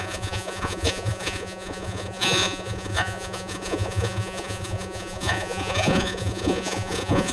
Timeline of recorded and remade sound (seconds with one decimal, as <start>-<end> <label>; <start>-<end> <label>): 0.0-7.3 remade